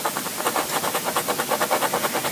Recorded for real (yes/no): yes